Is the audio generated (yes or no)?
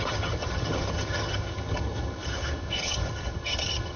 yes